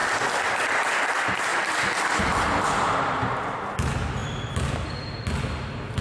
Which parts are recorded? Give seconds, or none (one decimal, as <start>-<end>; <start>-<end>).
0.0-6.0